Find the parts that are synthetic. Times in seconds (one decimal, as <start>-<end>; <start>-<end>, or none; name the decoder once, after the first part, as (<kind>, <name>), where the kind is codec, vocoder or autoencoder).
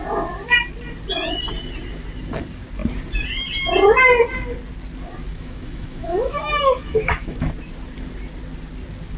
5.3-7.5 (autoencoder, DAC-VAE)